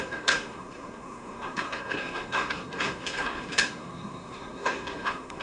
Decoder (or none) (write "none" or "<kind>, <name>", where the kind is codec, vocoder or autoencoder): codec, SNAC